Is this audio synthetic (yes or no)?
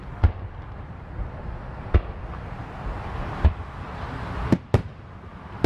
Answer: no